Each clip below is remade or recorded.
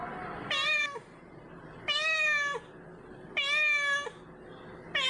recorded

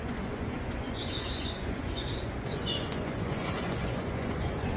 remade